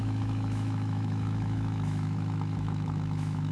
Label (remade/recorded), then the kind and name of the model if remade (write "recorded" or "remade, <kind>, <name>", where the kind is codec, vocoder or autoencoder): remade, autoencoder, DAC-VAE